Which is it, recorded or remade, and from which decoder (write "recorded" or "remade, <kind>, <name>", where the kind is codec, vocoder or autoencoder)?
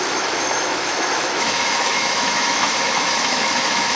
remade, autoencoder, DAC-VAE